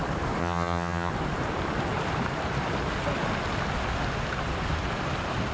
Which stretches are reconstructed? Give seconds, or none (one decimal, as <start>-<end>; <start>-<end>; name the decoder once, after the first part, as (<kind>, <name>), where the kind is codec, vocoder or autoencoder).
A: 0.4-1.1 (vocoder, HiFi-GAN)